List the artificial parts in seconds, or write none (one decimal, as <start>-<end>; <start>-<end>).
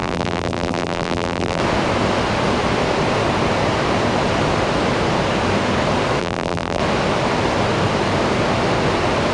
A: 0.0-1.6; 6.2-6.8